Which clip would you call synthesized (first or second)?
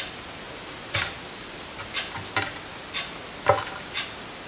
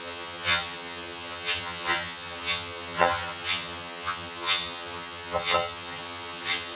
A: second